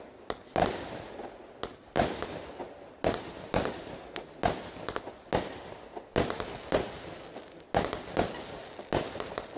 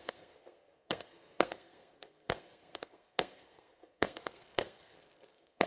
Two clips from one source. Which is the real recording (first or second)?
first